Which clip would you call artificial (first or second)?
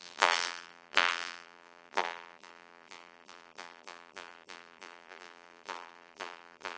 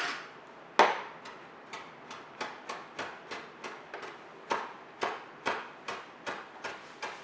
first